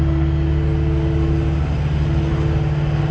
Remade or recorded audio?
recorded